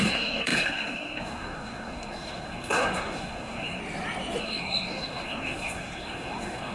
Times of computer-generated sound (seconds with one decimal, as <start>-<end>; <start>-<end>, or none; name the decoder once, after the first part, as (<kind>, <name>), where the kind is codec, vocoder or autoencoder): 0.0-3.8 (codec, SNAC); 4.4-6.7